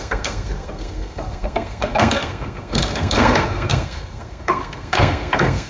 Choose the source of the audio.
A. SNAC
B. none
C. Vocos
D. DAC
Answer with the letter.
A